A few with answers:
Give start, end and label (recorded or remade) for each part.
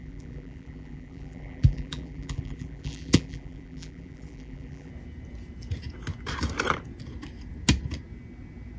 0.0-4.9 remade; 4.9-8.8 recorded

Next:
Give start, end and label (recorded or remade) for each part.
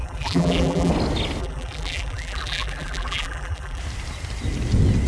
0.0-0.9 remade; 0.9-1.4 recorded; 1.4-3.8 remade; 3.8-5.1 recorded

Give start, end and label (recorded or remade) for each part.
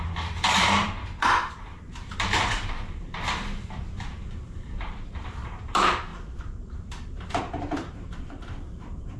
0.0-9.2 remade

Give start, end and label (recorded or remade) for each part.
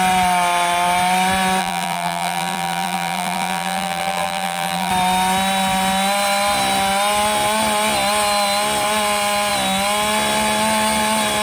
0.0-1.6 recorded; 1.6-4.9 remade; 4.9-11.4 recorded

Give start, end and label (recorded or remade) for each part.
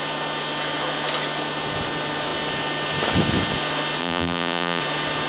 0.0-4.0 recorded; 4.0-4.8 remade; 4.8-5.3 recorded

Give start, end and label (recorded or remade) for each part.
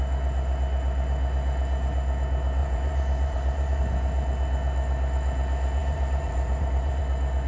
0.0-2.6 recorded; 2.6-3.8 remade; 3.8-5.8 recorded; 5.8-7.0 remade; 7.0-7.5 recorded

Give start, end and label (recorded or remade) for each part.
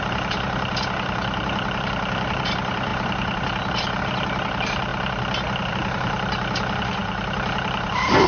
0.0-4.9 remade; 4.9-5.7 recorded; 5.7-8.3 remade